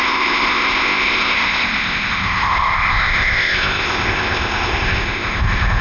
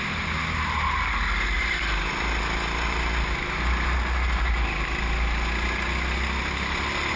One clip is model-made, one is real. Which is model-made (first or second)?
first